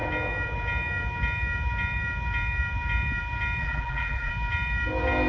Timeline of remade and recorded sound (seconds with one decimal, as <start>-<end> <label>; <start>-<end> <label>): 0.0-3.6 recorded; 3.6-4.3 remade; 4.3-5.3 recorded